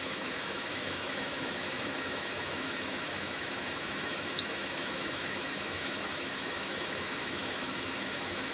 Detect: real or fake fake